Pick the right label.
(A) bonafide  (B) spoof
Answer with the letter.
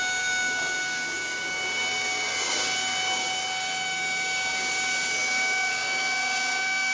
B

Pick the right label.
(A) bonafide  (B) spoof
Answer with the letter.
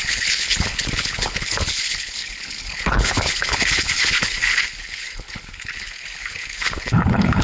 B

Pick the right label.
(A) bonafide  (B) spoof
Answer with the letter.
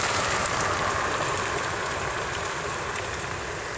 B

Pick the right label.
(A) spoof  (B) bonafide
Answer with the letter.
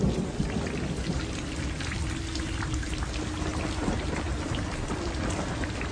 B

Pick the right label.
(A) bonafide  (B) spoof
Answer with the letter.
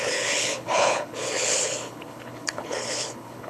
B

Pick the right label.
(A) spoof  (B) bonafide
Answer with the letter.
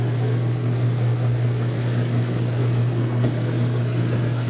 A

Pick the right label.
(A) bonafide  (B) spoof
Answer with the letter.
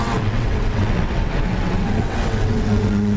B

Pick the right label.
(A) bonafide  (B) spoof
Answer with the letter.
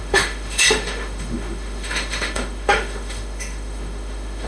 B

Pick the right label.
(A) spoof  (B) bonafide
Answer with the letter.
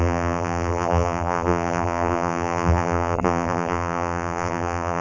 A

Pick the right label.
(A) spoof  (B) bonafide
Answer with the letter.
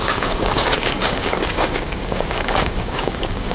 A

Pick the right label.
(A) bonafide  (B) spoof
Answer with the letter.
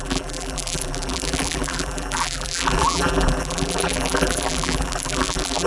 B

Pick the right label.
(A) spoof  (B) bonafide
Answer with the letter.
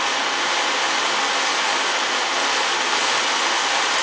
B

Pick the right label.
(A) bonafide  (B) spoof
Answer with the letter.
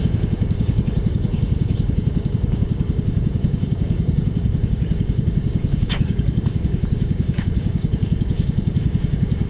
B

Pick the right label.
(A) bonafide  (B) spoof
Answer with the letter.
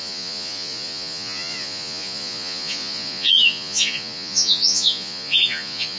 B